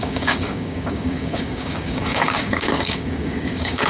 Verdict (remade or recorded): remade